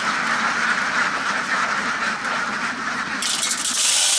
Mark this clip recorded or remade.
recorded